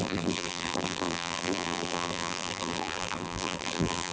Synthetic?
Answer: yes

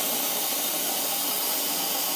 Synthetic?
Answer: no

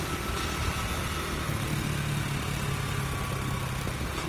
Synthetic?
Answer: no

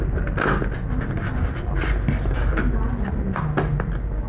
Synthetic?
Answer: no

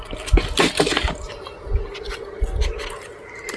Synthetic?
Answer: no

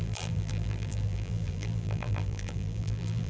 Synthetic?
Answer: yes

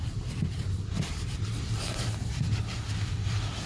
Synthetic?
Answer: yes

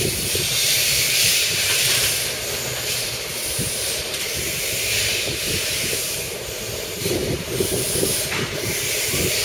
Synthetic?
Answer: yes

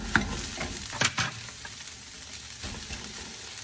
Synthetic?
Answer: no